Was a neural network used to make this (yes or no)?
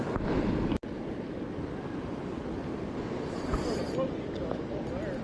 no